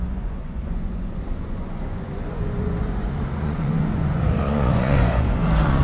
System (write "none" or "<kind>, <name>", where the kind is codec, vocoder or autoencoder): vocoder, Vocos